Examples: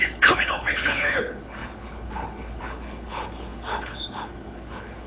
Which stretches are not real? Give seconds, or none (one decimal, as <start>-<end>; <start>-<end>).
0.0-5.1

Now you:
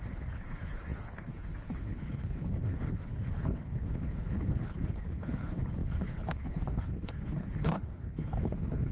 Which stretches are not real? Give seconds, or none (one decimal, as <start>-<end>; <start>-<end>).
0.0-8.9

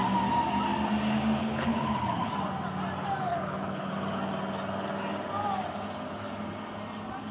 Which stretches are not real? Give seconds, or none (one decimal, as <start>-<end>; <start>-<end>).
1.4-2.3; 3.3-3.9

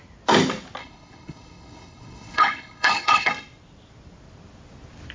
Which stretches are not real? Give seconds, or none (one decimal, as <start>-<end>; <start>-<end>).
0.8-3.3

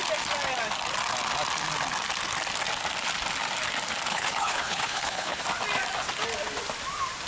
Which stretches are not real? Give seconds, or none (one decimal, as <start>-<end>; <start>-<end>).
4.1-5.4